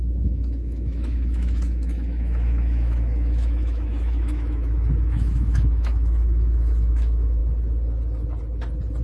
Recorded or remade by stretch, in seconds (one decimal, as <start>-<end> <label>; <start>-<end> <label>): 0.0-7.4 remade; 7.4-9.0 recorded